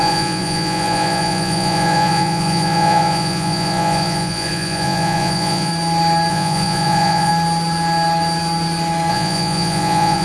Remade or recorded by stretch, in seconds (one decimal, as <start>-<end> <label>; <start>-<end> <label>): 0.0-5.7 remade; 5.7-6.3 recorded; 6.3-7.3 remade; 7.3-9.1 recorded; 9.1-10.2 remade